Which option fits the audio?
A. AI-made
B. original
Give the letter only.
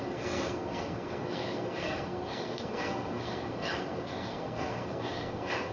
A